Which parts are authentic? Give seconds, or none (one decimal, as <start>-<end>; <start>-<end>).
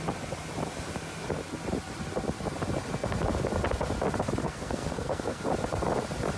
0.0-4.4; 5.4-6.4